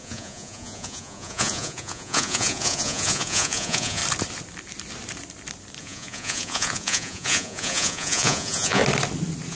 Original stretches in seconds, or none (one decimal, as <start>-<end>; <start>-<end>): 4.0-5.8; 8.8-9.5